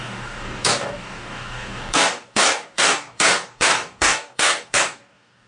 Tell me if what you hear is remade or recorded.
remade